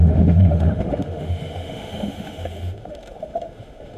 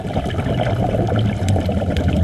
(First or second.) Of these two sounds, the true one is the second